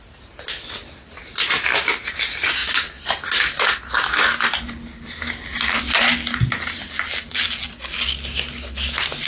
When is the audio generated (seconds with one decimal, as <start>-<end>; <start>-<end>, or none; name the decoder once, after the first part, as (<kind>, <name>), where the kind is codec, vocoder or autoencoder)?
6.8-7.7 (vocoder, BigVGAN v2)